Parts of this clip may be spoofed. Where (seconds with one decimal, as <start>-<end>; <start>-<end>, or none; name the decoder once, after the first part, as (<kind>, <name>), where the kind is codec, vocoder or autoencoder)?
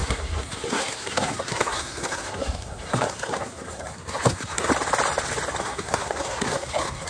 0.0-4.7 (codec, SNAC); 5.6-7.1